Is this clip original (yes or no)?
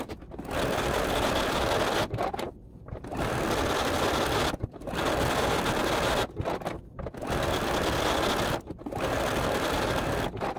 yes